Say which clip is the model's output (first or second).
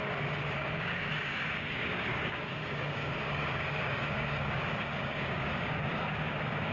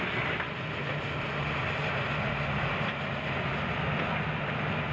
first